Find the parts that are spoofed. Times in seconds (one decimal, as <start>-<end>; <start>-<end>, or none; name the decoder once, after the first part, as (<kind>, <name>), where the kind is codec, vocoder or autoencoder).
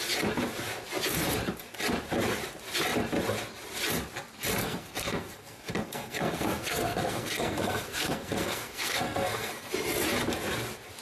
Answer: 4.6-9.7 (codec, SNAC)